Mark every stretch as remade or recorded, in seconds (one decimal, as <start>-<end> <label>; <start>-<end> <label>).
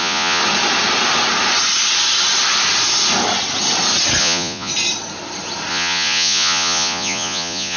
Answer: 0.0-0.4 remade; 0.4-4.2 recorded; 4.2-4.7 remade; 4.7-5.7 recorded; 5.7-7.8 remade